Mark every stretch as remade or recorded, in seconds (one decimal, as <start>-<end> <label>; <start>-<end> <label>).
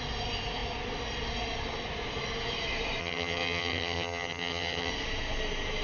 0.0-3.0 recorded; 3.0-4.9 remade; 4.9-5.8 recorded